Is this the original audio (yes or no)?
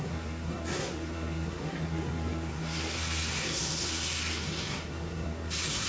no